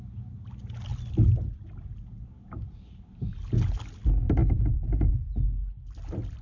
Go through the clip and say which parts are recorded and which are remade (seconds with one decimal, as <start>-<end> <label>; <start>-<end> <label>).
0.0-4.4 recorded; 4.4-5.1 remade; 5.1-6.4 recorded